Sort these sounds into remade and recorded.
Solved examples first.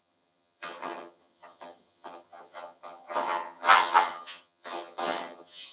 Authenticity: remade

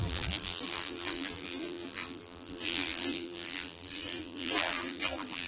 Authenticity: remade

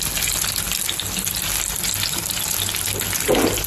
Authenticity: recorded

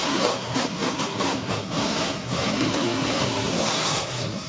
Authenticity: remade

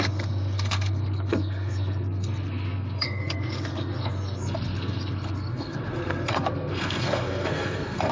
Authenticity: remade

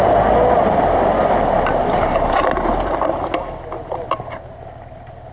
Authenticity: recorded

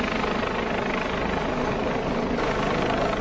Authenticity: recorded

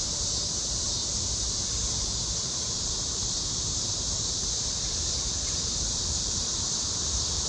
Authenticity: remade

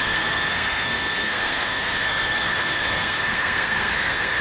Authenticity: remade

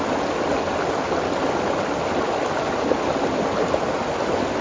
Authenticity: recorded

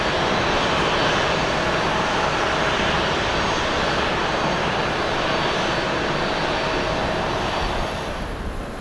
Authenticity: recorded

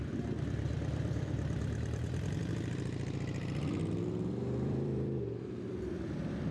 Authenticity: remade